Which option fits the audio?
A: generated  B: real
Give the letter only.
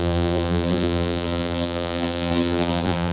A